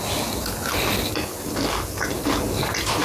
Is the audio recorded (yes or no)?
yes